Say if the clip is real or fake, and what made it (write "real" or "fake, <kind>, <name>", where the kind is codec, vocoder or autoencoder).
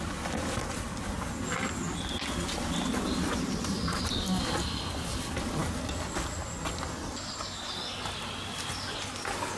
real